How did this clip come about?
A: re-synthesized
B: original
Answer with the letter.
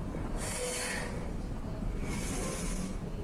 B